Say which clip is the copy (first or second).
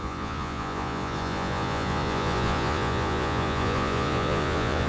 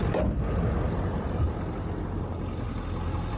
first